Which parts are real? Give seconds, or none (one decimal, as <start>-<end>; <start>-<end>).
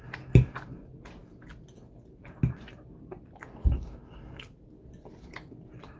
0.0-6.0